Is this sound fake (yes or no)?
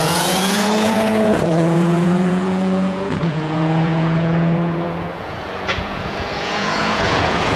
yes